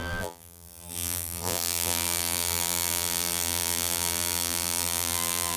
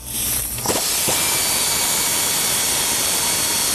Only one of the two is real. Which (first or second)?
second